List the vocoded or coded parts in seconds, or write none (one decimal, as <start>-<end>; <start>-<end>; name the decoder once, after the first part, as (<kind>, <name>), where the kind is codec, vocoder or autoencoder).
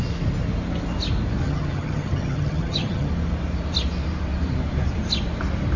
1.4-3.1 (vocoder, HiFi-GAN)